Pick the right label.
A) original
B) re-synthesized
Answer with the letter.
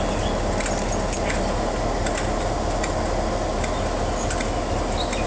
A